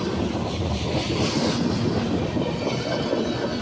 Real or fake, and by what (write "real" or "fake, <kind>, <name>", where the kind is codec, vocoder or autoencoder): real